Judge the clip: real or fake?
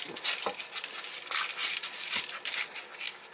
real